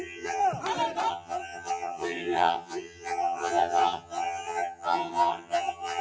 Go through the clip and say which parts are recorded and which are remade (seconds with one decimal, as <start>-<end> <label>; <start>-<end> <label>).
0.0-0.4 remade; 0.4-1.1 recorded; 1.1-6.0 remade